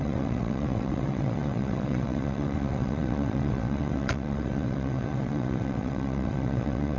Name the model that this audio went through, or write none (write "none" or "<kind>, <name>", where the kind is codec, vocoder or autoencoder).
vocoder, WaveNeXt